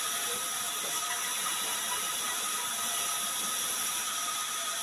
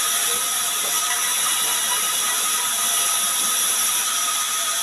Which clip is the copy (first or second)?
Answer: first